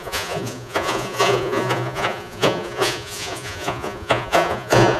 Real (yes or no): no